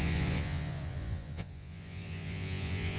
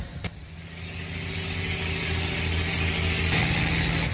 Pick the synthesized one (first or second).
first